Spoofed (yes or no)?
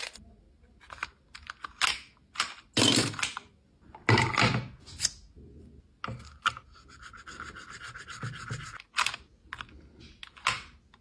no